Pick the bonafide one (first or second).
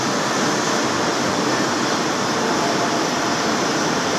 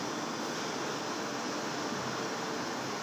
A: second